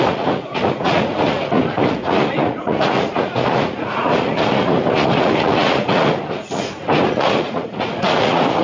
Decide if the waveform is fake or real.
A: fake